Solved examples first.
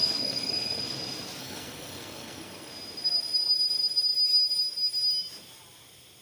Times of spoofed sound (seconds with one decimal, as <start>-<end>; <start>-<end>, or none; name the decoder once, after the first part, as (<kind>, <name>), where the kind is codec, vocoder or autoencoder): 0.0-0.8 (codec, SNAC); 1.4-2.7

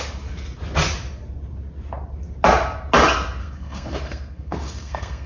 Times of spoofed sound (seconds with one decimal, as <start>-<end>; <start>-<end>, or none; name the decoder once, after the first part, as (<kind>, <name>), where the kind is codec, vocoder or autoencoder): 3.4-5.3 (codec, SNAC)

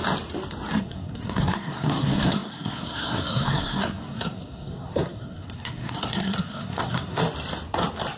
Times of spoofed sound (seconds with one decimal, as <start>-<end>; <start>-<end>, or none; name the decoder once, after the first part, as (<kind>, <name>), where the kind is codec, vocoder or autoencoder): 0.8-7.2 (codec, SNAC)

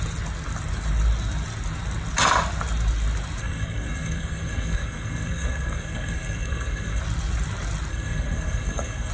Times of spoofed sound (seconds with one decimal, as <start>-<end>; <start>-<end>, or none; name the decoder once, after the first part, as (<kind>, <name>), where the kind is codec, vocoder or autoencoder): 3.4-7.0 (codec, SNAC); 7.9-9.1

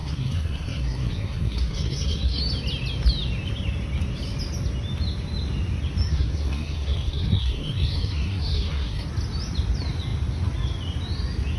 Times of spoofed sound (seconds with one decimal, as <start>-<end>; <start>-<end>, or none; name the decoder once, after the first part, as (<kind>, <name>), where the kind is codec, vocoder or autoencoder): 0.0-2.4 (codec, SNAC); 6.1-9.1